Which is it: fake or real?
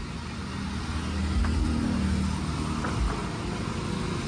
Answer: real